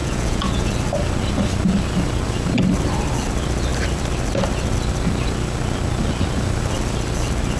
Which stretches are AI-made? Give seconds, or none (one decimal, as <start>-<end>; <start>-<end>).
0.0-0.7